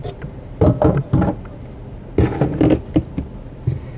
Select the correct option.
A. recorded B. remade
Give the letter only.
A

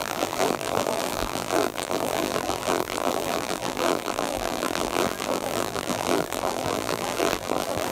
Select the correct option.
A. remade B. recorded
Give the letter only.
A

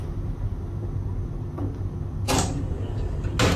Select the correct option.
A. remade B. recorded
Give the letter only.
B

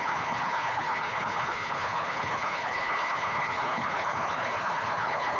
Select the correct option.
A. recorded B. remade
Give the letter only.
B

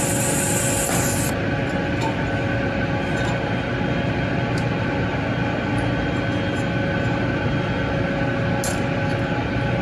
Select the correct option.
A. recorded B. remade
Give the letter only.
A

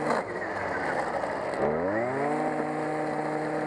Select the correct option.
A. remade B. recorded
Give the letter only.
B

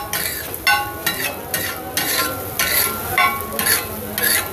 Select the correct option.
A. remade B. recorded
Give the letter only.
B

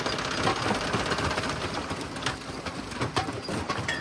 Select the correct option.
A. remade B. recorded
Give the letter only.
B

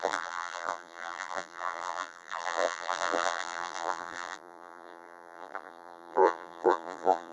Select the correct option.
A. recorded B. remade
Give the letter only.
B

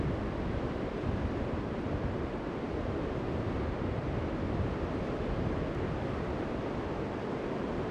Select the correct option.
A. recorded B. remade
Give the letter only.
A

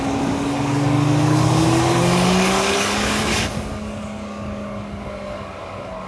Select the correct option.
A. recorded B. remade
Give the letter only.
B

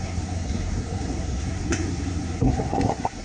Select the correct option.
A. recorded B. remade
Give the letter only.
B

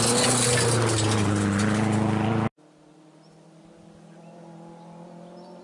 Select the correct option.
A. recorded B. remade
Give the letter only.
A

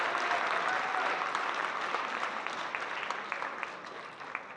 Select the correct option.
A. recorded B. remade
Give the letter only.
A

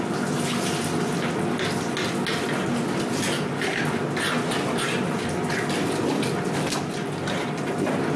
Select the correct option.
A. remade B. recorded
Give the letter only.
B